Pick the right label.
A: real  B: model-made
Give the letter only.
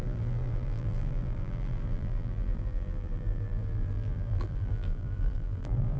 B